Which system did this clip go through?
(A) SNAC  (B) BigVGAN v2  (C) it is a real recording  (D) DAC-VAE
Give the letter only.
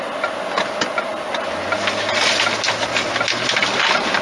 C